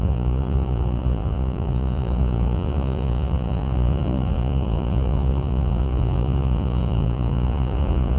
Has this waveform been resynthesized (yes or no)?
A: yes